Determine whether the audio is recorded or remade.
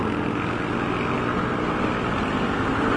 recorded